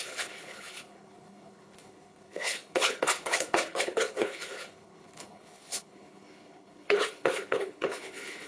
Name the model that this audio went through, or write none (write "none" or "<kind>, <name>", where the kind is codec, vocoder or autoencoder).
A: codec, HILCodec